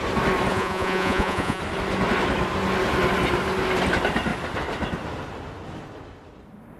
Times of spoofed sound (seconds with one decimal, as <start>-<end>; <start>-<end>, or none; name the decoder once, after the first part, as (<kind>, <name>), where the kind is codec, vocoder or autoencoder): 0.5-1.6 (vocoder, Vocos)

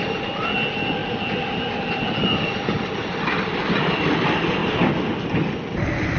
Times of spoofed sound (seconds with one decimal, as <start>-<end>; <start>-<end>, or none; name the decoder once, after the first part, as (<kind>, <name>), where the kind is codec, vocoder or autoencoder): none